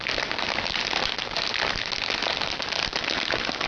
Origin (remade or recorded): recorded